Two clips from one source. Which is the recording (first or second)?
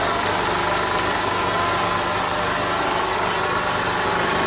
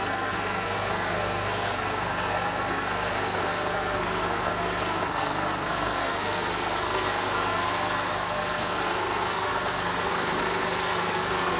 first